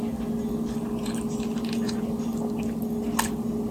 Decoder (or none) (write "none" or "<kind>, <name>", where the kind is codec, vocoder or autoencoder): none